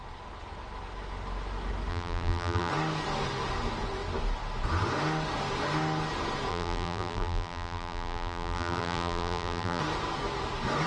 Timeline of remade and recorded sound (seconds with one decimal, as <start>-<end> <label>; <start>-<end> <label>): 0.0-1.9 recorded; 1.9-2.7 remade; 2.7-6.5 recorded; 6.5-9.8 remade; 9.8-10.9 recorded